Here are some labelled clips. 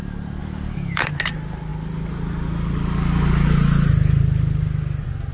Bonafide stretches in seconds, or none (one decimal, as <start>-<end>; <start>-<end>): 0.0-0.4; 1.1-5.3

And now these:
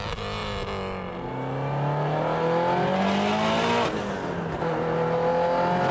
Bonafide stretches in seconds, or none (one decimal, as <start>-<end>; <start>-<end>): 0.0-5.9

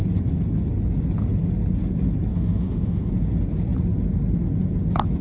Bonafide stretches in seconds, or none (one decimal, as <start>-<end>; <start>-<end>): 0.0-2.3; 3.1-5.2

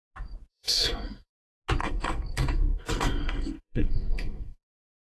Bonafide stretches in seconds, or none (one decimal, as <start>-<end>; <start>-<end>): 0.0-0.5; 1.3-1.8

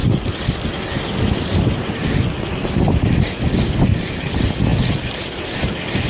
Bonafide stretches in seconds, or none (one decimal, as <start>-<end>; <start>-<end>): 0.0-6.1